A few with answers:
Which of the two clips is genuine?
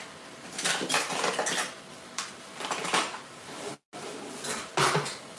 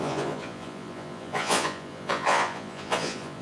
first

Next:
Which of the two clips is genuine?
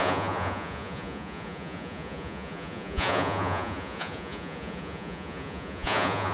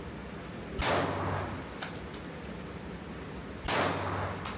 second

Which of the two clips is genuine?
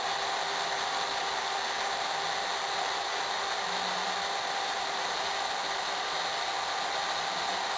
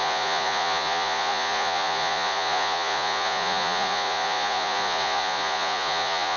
first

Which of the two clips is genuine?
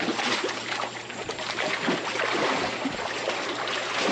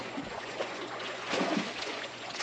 first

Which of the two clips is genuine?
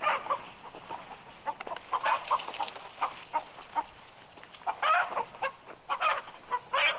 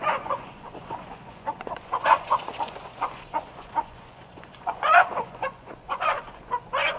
first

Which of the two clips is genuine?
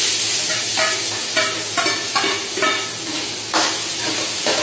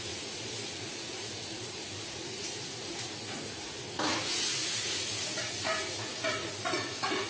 first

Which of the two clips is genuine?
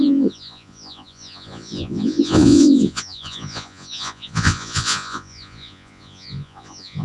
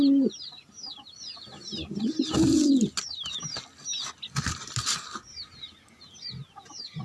second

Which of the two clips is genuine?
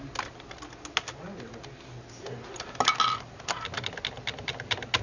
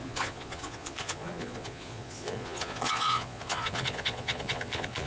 first